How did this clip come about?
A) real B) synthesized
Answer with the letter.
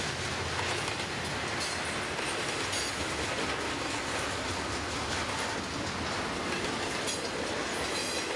A